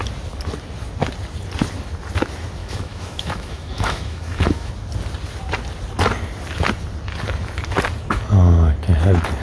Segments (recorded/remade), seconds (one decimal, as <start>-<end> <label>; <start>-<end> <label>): 0.0-2.6 recorded; 2.6-4.7 remade; 4.7-9.4 recorded